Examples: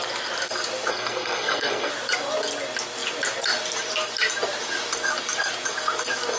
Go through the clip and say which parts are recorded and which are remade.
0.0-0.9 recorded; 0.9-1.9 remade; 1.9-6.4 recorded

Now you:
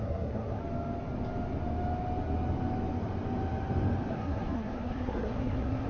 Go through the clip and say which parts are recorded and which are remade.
0.0-0.6 remade; 0.6-4.1 recorded; 4.1-5.9 remade

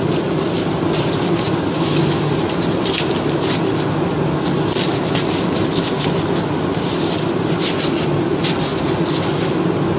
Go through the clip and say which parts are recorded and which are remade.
0.0-10.0 recorded